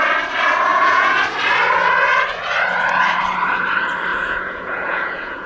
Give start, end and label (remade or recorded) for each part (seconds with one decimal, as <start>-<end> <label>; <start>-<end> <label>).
0.0-0.7 recorded; 0.7-1.2 remade; 1.2-4.1 recorded; 4.1-5.5 remade